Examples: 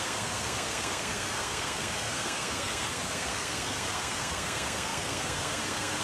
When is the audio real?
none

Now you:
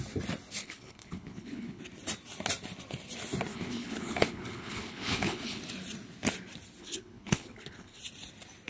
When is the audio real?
0.0-0.6; 1.8-3.5; 5.6-6.8; 8.0-8.7

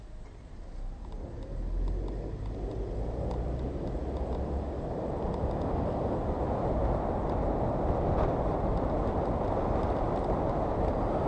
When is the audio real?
0.0-11.3